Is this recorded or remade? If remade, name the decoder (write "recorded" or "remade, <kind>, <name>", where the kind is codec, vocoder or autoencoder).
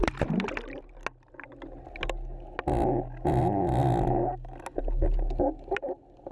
recorded